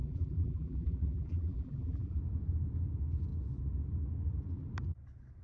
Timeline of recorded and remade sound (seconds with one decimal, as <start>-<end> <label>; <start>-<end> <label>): 0.0-2.2 remade; 2.2-5.4 recorded